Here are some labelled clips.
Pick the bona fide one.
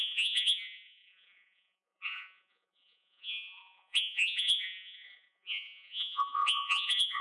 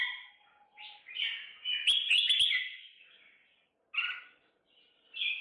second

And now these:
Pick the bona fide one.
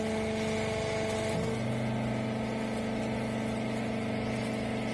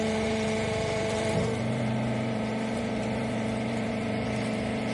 first